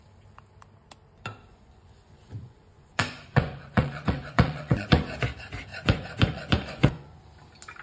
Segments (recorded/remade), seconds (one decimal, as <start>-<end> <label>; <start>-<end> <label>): 0.0-1.5 recorded; 1.5-5.0 remade; 5.0-5.7 recorded; 5.7-7.2 remade; 7.2-7.8 recorded